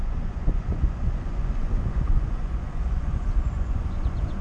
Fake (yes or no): yes